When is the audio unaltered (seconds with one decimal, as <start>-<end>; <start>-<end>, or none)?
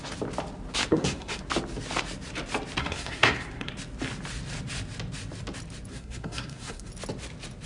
0.0-0.9; 1.4-2.8; 3.7-5.9; 6.9-7.7